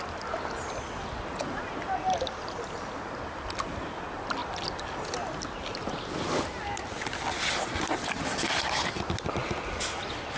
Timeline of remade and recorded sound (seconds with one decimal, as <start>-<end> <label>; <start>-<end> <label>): 0.0-10.4 recorded